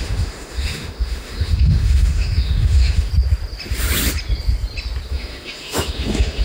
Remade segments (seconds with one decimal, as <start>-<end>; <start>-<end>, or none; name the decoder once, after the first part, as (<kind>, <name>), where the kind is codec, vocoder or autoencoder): 0.0-3.1 (autoencoder, DAC-VAE); 5.1-6.4